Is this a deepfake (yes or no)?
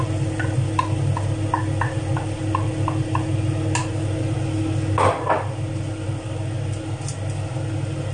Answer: no